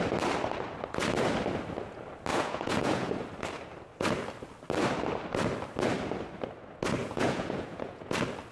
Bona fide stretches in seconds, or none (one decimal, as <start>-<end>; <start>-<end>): 0.0-2.3; 3.1-7.0; 8.1-8.5